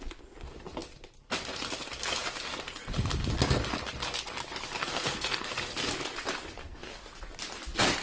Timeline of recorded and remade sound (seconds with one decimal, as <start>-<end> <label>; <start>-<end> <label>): 0.0-4.8 recorded; 4.8-5.5 remade; 5.5-6.6 recorded; 6.6-7.1 remade; 7.1-8.0 recorded